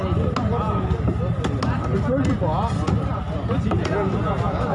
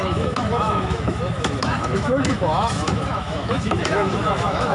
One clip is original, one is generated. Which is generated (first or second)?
second